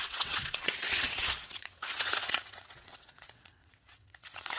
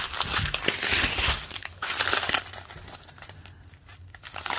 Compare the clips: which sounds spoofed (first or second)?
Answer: first